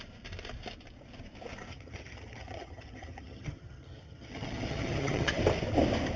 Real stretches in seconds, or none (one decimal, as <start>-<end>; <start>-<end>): 0.0-1.7; 5.4-6.2